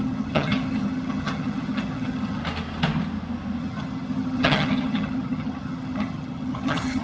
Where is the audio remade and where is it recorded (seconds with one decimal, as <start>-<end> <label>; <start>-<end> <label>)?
0.0-2.4 remade; 2.4-3.6 recorded; 3.6-7.0 remade